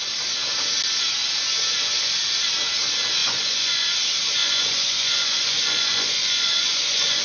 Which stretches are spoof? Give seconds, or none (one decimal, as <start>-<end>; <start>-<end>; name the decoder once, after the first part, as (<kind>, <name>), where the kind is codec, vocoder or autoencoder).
3.2-3.9 (vocoder, Vocos); 4.4-7.2